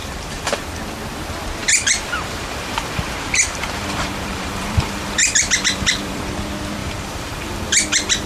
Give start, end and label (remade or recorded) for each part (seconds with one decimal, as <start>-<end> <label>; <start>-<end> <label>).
0.0-0.7 remade; 0.7-1.6 recorded; 1.6-6.2 remade; 6.2-6.8 recorded; 6.8-8.3 remade